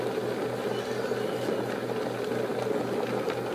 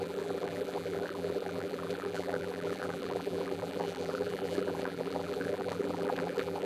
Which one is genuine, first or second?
first